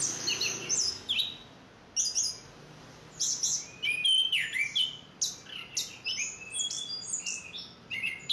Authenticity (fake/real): real